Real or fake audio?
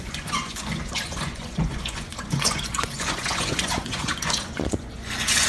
fake